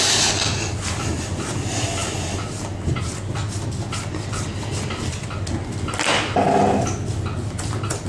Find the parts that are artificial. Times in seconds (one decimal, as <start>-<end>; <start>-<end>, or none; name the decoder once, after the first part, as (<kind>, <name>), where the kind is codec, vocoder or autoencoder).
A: none